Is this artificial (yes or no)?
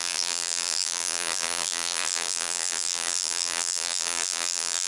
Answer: yes